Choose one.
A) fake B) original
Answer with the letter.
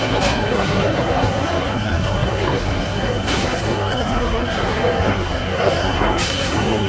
A